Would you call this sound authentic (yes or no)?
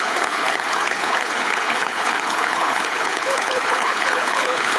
no